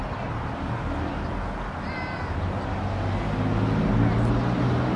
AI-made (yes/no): no